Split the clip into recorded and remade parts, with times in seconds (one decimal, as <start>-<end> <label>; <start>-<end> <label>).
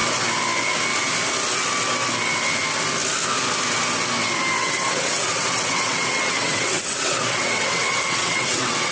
0.0-4.6 recorded; 4.6-8.9 remade